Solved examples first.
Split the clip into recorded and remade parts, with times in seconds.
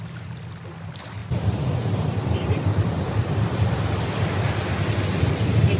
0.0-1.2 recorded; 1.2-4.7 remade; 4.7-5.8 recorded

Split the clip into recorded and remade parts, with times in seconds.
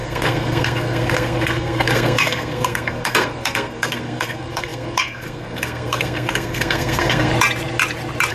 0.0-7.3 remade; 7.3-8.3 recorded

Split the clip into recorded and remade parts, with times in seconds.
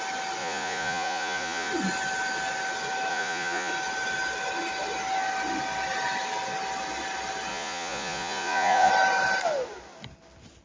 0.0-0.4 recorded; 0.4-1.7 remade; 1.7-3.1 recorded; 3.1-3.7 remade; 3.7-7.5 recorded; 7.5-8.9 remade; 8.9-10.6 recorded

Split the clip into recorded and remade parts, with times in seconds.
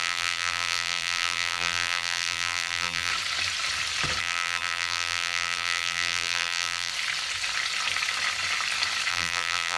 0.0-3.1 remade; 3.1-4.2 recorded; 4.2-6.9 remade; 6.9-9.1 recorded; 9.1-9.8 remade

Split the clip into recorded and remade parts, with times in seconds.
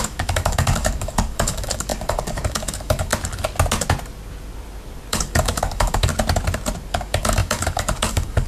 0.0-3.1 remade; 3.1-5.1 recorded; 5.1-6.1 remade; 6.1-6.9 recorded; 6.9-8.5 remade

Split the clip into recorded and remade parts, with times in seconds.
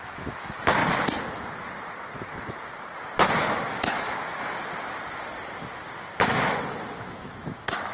0.0-0.8 remade; 0.8-3.5 recorded; 3.5-4.4 remade; 4.4-6.2 recorded; 6.2-7.9 remade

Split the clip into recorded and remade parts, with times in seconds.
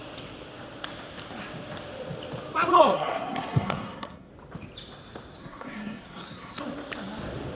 0.0-2.7 recorded; 2.7-4.3 remade; 4.3-5.4 recorded; 5.4-6.6 remade; 6.6-7.6 recorded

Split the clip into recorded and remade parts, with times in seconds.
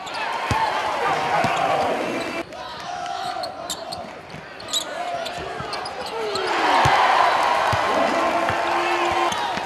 0.0-2.7 recorded; 2.7-3.5 remade; 3.5-9.7 recorded